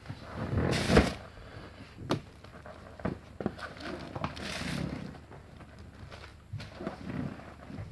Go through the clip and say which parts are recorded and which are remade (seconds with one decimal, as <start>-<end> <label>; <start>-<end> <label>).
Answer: 0.0-7.9 recorded